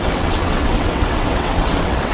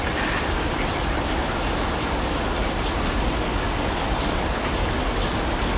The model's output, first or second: first